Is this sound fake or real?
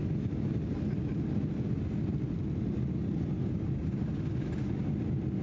real